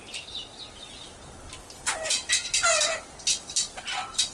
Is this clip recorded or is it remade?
recorded